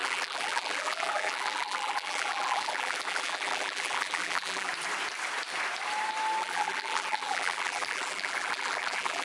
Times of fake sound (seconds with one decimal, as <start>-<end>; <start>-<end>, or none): 0.0-4.7; 6.4-9.2